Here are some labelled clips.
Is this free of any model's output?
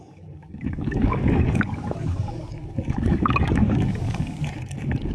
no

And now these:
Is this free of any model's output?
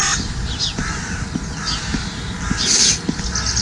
yes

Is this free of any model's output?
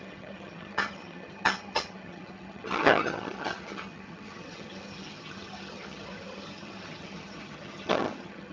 no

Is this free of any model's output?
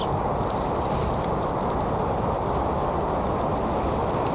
yes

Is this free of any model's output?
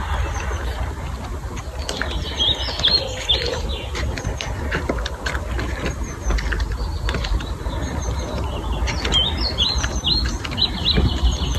yes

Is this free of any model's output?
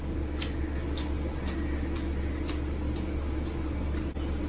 yes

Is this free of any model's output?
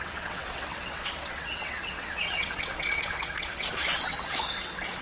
no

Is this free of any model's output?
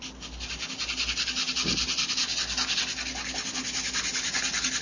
yes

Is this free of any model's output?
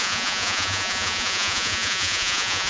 no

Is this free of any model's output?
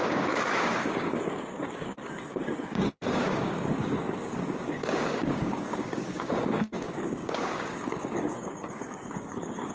no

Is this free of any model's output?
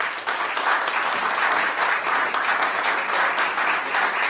yes